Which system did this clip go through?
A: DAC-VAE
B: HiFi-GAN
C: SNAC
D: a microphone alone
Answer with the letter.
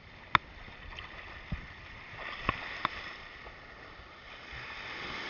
D